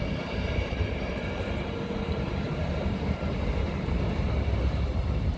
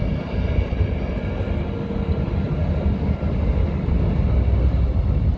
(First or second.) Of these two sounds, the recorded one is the second